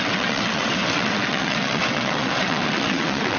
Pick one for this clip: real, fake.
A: fake